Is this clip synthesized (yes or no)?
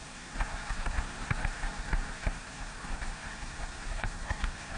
yes